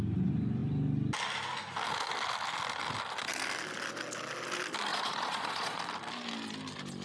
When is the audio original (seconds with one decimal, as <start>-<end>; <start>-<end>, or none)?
0.0-4.9; 5.8-7.0